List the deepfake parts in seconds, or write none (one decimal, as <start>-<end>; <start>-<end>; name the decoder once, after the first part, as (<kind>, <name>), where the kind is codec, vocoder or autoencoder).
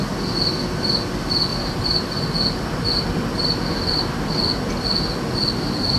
1.5-4.3 (vocoder, BigVGAN v2)